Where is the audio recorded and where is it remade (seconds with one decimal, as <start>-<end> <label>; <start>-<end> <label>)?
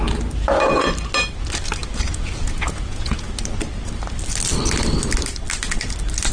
0.0-1.8 recorded; 1.8-3.3 remade; 3.3-6.3 recorded